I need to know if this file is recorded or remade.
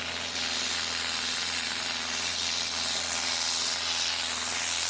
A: recorded